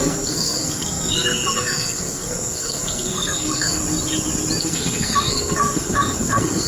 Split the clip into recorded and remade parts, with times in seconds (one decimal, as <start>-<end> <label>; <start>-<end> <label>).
0.0-3.8 remade; 3.8-4.6 recorded; 4.6-6.7 remade